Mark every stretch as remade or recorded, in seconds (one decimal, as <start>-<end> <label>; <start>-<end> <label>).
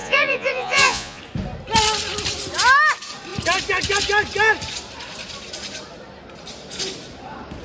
0.0-1.2 remade; 1.2-7.6 recorded